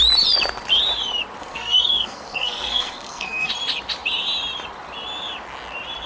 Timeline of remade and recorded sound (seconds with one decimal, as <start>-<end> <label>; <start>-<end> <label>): 0.0-1.4 recorded; 1.4-3.5 remade; 3.5-6.1 recorded